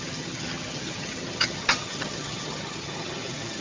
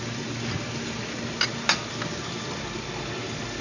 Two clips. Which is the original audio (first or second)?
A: second